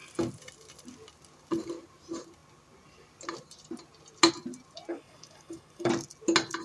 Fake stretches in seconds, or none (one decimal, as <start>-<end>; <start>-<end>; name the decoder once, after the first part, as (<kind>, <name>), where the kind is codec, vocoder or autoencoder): 4.9-5.9 (codec, DAC)